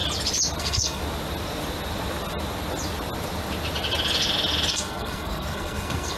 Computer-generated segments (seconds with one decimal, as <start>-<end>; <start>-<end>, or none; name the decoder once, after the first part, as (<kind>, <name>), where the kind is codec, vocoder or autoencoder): 0.6-1.0 (codec, SNAC); 4.7-6.2